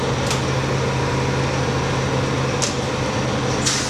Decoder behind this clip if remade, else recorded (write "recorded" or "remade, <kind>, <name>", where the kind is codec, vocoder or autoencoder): recorded